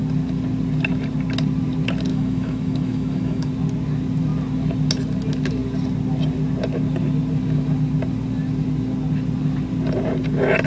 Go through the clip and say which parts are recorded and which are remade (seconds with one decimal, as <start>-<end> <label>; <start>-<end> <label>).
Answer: 0.0-2.1 recorded; 2.1-3.5 remade; 3.5-10.7 recorded